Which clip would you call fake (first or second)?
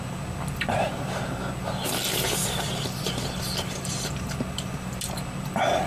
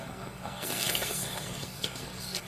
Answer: second